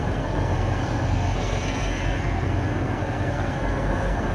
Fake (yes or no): yes